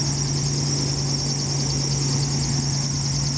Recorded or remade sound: recorded